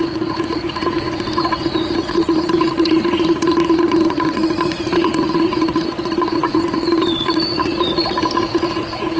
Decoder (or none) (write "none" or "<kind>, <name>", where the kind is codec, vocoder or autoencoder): vocoder, Vocos